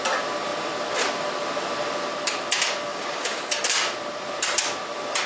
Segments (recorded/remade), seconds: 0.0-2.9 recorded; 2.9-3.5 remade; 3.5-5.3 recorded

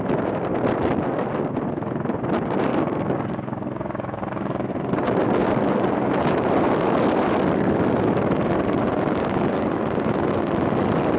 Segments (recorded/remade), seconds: 0.0-2.7 recorded; 2.7-4.7 remade; 4.7-11.2 recorded

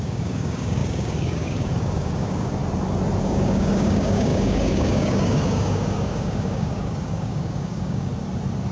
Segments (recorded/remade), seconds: 0.0-2.6 remade; 2.6-3.2 recorded; 3.2-8.1 remade; 8.1-8.7 recorded

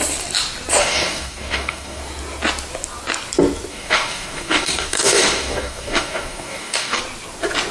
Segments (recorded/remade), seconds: 0.0-0.8 recorded; 0.8-2.0 remade; 2.0-3.7 recorded; 3.7-7.0 remade; 7.0-7.7 recorded

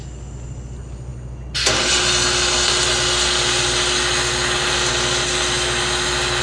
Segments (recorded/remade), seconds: 0.0-6.4 recorded

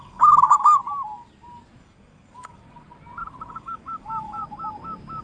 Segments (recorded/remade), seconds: 0.0-0.8 remade; 0.8-1.8 recorded; 1.8-2.6 remade; 2.6-3.5 recorded; 3.5-4.4 remade; 4.4-5.2 recorded